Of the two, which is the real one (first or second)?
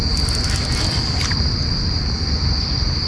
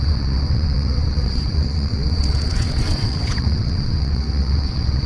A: first